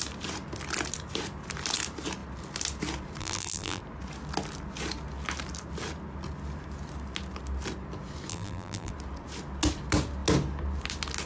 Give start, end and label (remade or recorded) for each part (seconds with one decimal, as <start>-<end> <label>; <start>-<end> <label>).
0.0-3.2 recorded; 3.2-3.8 remade; 3.8-8.3 recorded; 8.3-8.9 remade; 8.9-11.3 recorded